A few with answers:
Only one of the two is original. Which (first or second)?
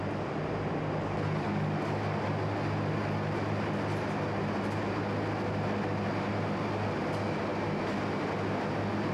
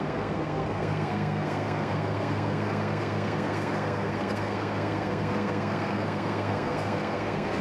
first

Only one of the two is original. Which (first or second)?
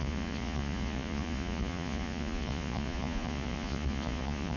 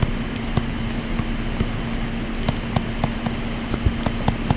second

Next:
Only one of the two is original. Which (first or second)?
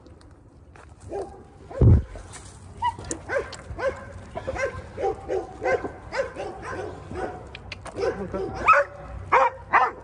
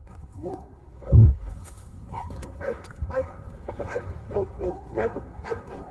first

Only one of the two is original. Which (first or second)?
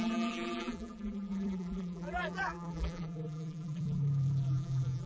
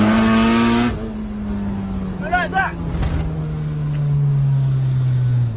second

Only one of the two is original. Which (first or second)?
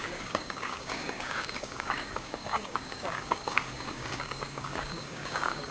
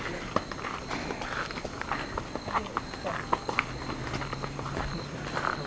second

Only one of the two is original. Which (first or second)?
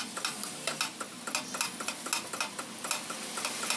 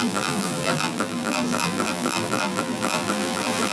first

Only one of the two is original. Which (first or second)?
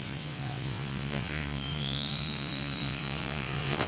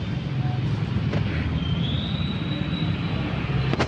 second